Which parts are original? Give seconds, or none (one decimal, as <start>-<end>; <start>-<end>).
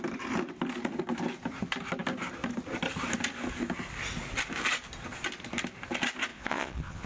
0.0-6.3